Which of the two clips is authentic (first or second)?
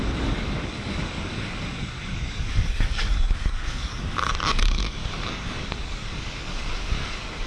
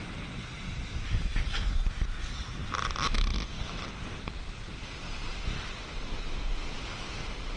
second